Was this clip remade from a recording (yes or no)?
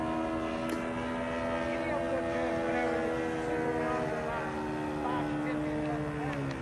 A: no